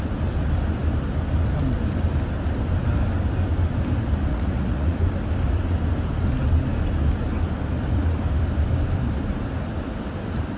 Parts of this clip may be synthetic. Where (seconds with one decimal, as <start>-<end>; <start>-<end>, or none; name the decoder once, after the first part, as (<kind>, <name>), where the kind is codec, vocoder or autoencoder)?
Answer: 4.3-5.0 (vocoder, Vocos)